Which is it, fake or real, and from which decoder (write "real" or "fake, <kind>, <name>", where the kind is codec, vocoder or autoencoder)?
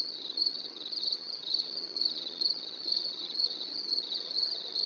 fake, vocoder, HiFi-GAN